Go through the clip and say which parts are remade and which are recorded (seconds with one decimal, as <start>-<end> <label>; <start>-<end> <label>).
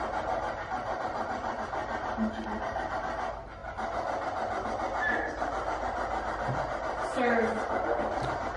0.0-8.6 recorded